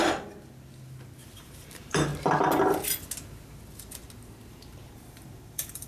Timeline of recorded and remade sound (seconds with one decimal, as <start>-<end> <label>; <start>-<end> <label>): 0.0-1.4 recorded; 1.4-2.1 remade; 2.1-4.5 recorded; 4.5-5.9 remade

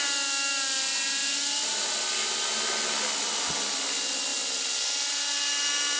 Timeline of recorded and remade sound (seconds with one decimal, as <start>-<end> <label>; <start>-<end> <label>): 0.0-6.0 recorded